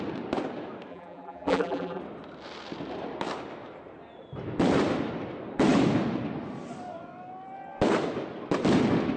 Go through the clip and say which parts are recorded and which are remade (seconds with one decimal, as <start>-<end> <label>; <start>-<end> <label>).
0.0-0.9 recorded; 0.9-2.0 remade; 2.0-9.2 recorded

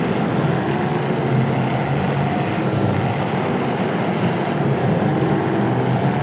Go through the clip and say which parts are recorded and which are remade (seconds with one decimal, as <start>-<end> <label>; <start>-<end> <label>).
0.0-6.2 recorded

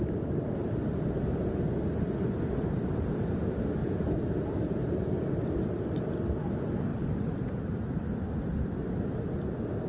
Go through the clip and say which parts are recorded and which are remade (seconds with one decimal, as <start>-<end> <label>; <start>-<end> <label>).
0.0-3.8 recorded; 3.8-5.6 remade; 5.6-6.9 recorded; 6.9-8.1 remade; 8.1-9.9 recorded

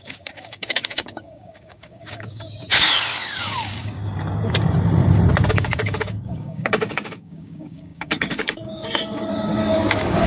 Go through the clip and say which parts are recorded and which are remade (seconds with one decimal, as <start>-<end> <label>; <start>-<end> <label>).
0.0-4.0 remade; 4.0-5.5 recorded; 5.5-10.3 remade

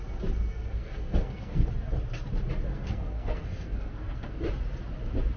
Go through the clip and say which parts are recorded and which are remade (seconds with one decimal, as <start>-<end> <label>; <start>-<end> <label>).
0.0-0.5 recorded; 0.5-1.7 remade; 1.7-2.7 recorded; 2.7-4.4 remade; 4.4-5.4 recorded